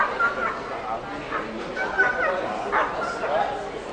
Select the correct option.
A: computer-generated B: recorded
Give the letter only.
B